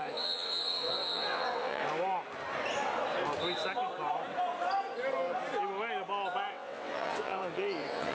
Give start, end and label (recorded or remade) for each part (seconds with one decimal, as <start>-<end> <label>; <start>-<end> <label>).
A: 0.0-1.8 remade; 1.8-6.5 recorded; 6.5-8.1 remade